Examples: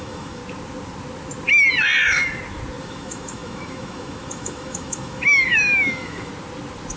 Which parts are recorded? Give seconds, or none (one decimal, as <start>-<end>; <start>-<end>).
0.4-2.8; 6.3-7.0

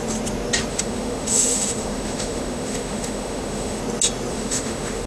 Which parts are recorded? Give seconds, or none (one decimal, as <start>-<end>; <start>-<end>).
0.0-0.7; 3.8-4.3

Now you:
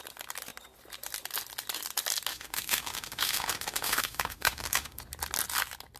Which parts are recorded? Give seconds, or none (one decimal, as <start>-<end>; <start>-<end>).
0.0-2.3; 5.0-6.0

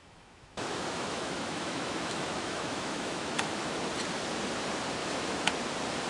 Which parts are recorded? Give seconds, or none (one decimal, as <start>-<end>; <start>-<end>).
3.7-5.0; 5.5-6.1